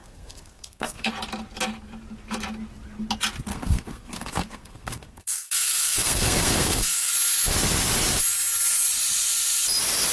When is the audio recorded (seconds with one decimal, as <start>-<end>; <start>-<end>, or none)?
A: 1.1-3.5; 7.1-10.1